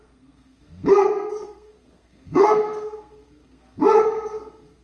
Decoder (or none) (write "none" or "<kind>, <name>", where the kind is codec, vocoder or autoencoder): codec, SNAC